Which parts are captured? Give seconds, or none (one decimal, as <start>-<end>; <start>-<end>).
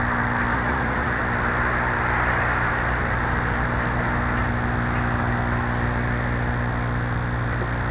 0.0-0.5; 1.2-7.9